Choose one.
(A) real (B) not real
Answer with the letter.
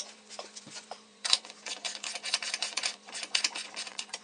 B